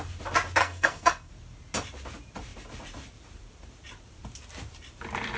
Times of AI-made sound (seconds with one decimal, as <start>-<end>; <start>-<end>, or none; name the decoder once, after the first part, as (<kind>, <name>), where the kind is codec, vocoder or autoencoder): 0.6-1.3 (codec, SNAC)